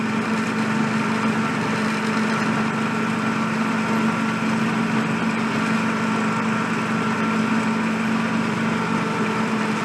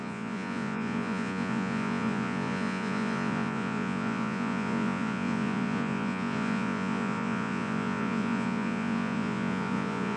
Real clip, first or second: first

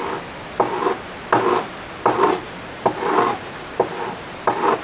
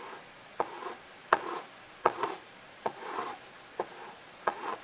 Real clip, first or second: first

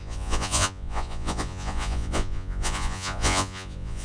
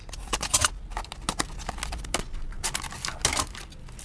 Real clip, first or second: second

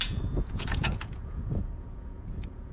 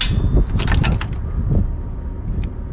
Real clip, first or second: second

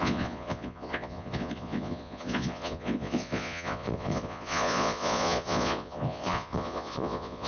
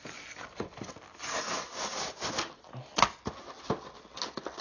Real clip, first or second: second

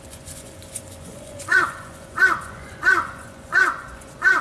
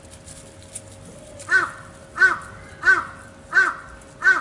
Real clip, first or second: second